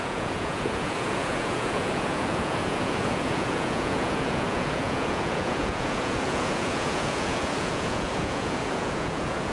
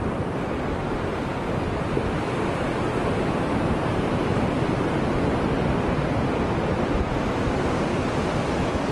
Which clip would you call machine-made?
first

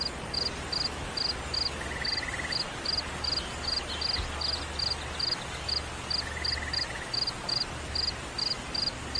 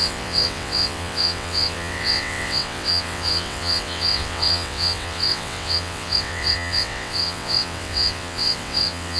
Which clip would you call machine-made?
second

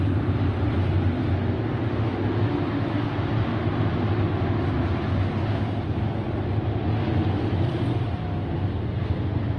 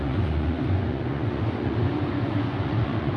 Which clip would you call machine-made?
second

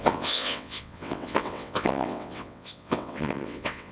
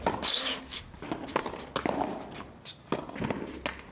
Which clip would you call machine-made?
first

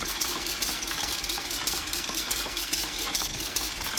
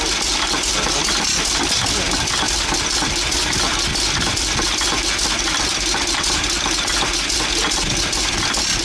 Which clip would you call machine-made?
first